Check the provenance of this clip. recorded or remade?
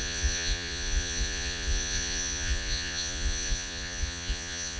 remade